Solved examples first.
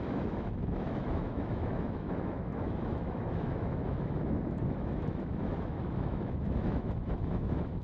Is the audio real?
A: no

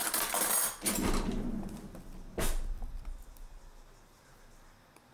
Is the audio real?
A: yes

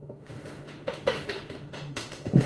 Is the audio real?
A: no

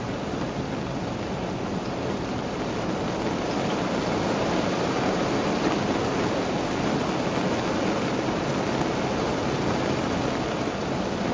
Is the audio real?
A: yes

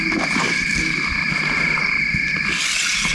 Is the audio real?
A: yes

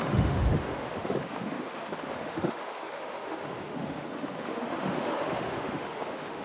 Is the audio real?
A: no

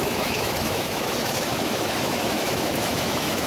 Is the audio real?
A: no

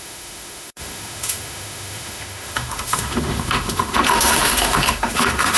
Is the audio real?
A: no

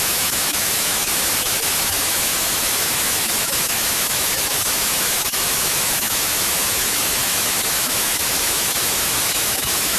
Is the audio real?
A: no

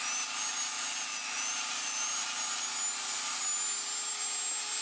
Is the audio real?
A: yes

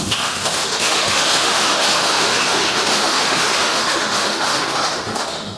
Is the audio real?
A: no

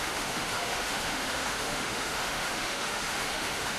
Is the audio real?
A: no